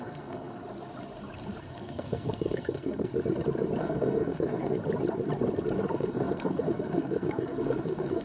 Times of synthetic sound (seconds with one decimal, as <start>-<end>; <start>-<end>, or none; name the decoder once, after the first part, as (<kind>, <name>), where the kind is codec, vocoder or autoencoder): 0.0-0.6 (codec, SNAC); 1.6-3.1; 3.8-4.8; 5.9-8.2